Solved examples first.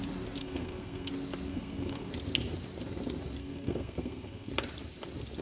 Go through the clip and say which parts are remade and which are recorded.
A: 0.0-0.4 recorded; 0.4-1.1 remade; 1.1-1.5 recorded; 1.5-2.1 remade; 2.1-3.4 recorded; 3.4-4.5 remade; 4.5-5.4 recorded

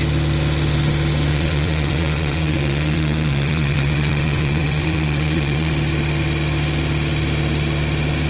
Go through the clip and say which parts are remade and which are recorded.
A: 0.0-1.3 recorded; 1.3-5.7 remade; 5.7-8.3 recorded

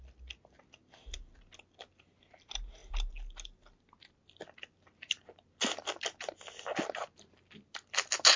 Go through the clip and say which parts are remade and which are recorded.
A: 0.0-8.4 recorded